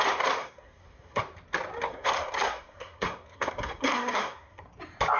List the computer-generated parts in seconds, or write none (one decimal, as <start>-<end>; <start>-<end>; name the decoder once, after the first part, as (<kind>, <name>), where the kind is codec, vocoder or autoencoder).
0.4-1.2 (codec, SNAC); 1.9-4.6